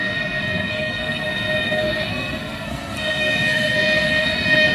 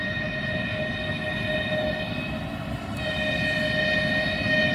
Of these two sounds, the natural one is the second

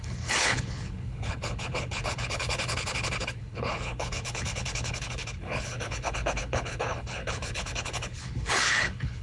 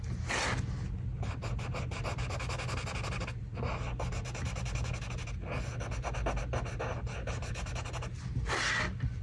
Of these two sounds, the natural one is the second